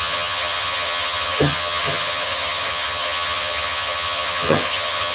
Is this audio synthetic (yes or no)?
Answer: yes